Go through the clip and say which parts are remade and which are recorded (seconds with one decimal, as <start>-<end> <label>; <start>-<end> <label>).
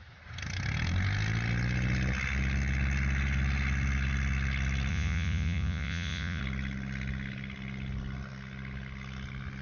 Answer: 0.0-4.9 recorded; 4.9-6.4 remade; 6.4-9.6 recorded